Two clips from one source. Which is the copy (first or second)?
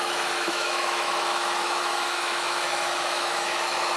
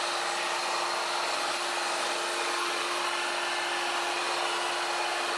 first